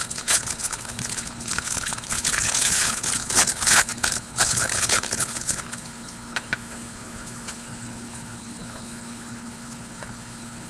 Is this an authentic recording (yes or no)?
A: no